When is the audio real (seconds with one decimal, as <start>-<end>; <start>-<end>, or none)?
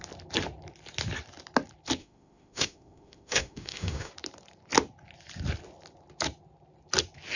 0.0-2.0; 4.1-7.4